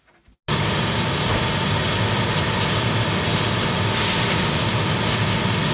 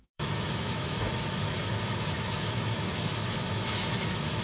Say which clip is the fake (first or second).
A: second